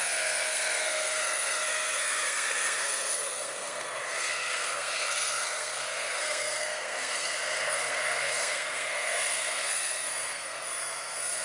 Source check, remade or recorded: remade